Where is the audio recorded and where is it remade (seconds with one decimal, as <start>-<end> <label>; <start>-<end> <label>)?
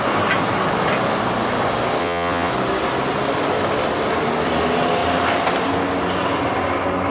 0.0-2.0 recorded; 2.0-2.5 remade; 2.5-7.1 recorded